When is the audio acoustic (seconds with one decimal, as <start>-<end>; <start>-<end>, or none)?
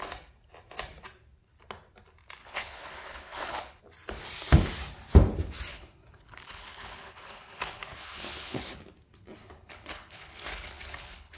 0.0-2.4; 3.8-5.7; 8.8-9.4